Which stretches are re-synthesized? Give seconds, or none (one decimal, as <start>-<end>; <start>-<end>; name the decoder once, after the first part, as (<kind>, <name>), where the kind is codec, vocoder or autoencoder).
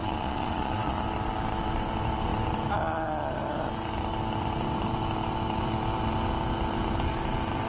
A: 0.0-1.0 (vocoder, Vocos)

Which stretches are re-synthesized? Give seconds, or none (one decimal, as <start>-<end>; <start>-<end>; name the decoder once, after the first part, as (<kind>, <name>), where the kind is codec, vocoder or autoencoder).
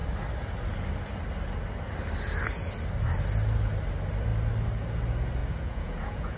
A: 5.4-6.4 (vocoder, Vocos)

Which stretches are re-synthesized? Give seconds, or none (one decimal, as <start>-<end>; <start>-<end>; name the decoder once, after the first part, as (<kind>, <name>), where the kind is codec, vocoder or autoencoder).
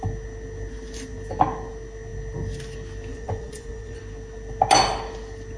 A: 3.1-4.0 (vocoder, Vocos)